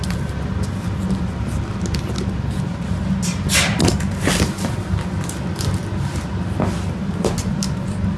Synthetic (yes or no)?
no